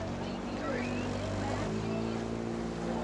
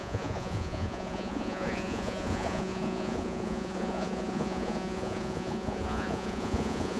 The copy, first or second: second